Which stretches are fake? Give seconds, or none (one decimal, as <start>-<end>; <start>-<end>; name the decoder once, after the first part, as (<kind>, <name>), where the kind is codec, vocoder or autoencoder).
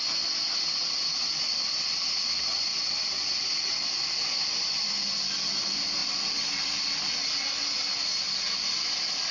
none